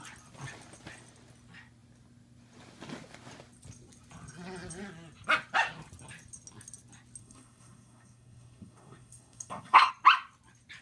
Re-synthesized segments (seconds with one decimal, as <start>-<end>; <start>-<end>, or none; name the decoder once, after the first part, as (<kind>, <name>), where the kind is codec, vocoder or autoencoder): 7.2-9.9 (codec, SNAC)